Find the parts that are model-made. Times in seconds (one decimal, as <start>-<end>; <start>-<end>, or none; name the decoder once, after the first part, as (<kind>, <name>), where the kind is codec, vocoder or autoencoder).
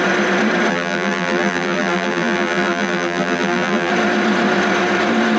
0.7-3.9 (vocoder, BigVGAN v2)